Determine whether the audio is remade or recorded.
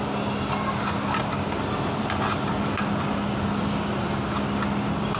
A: recorded